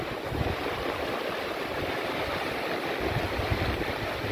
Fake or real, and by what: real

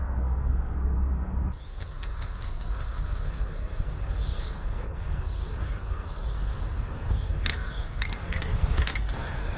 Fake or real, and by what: fake, codec, SNAC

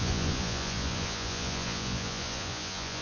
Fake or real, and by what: fake, vocoder, Vocos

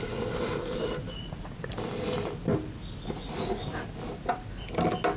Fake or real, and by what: real